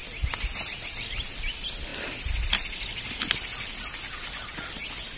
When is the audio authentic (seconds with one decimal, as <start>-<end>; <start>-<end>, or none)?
0.0-5.2